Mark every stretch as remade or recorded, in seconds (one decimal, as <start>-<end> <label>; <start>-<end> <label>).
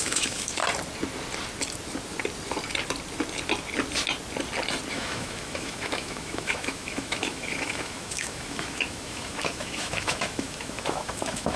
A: 0.0-0.6 remade; 0.6-4.9 recorded; 4.9-11.6 remade